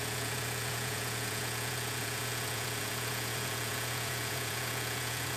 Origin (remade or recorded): remade